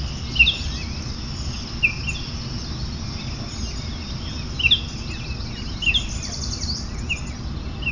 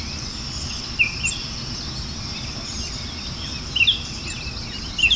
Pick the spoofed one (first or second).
second